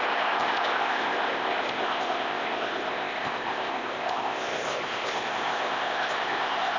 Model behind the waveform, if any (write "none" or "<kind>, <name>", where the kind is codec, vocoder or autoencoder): codec, ZipCodec